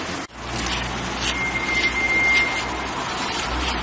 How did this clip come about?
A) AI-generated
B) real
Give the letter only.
B